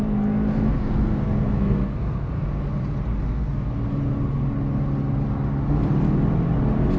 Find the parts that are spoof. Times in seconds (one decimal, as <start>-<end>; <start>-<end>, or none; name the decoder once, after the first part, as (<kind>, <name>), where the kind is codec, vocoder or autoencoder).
0.5-2.3 (codec, SNAC); 3.1-3.7